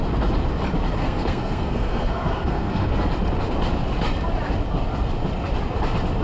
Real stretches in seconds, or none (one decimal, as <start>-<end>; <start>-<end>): 0.0-1.0; 2.9-6.2